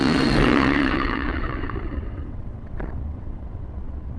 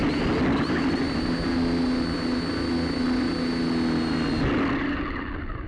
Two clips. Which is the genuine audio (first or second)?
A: second